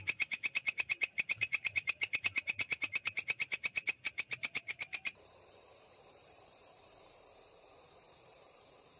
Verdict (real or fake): fake